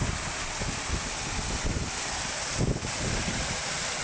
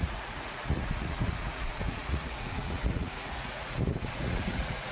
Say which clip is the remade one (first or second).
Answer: second